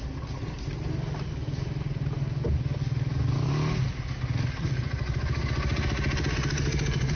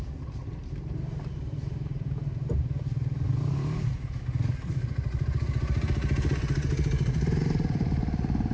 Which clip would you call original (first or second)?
first